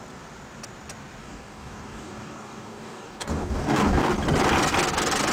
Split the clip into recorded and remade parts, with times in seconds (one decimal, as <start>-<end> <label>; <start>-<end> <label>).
0.0-1.2 recorded; 1.2-4.1 remade; 4.1-5.3 recorded